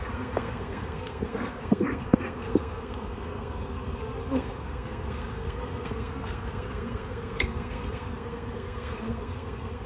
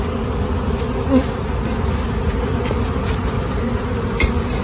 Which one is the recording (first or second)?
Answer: second